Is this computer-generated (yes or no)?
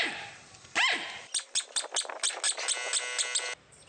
no